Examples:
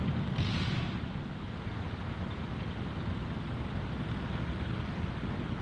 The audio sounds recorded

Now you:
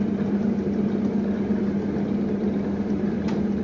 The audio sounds recorded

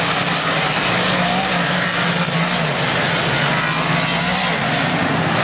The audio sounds recorded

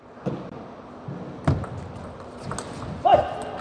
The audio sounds recorded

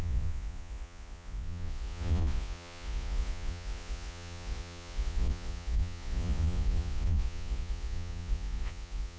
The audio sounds remade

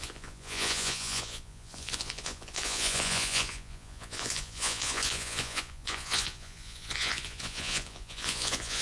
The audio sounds remade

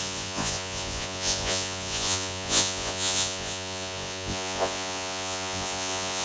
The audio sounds remade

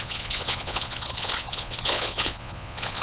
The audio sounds remade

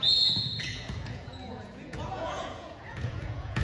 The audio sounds remade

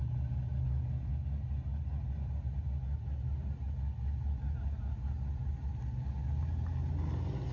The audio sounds recorded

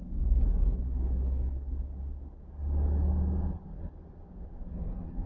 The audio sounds recorded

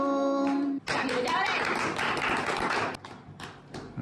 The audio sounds recorded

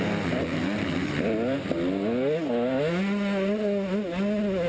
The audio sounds recorded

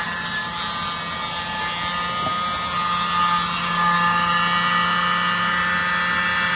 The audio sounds recorded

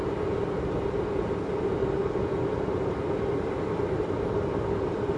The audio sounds recorded